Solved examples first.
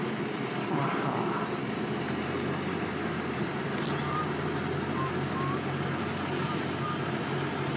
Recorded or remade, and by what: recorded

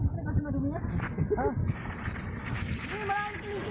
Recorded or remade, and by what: recorded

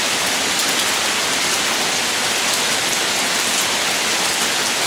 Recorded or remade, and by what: recorded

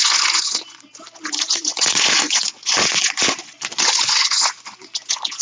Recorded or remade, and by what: remade, vocoder, Vocos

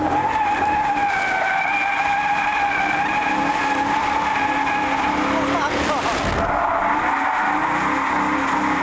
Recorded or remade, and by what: recorded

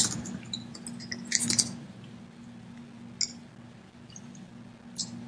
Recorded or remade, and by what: recorded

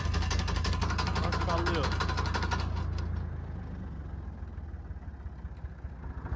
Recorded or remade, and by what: recorded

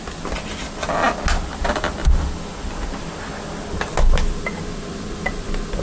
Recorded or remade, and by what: recorded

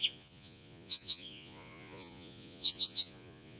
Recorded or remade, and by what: remade, vocoder, Vocos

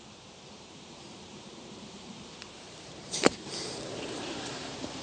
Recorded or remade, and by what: remade, vocoder, BigVGAN v2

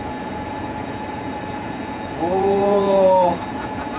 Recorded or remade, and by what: remade, vocoder, Vocos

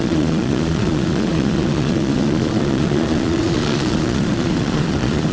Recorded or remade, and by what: remade, vocoder, Vocos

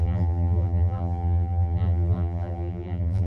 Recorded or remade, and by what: remade, vocoder, BigVGAN v2